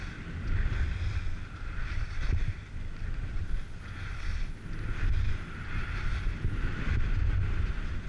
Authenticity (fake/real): real